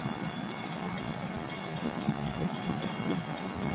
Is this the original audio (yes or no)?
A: no